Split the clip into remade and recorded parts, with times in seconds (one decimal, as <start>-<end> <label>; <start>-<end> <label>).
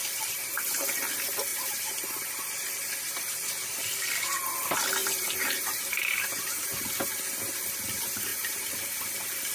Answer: 0.0-1.5 recorded; 1.5-2.0 remade; 2.0-5.0 recorded; 5.0-7.2 remade; 7.2-8.3 recorded; 8.3-9.0 remade; 9.0-9.5 recorded